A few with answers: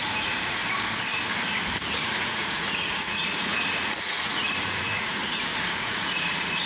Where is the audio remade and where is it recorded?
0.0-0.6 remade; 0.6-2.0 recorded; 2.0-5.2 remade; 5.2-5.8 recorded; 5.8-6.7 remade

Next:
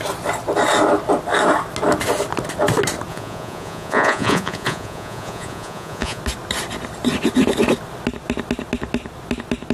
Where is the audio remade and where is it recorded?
0.0-3.1 recorded; 3.1-6.2 remade; 6.2-9.7 recorded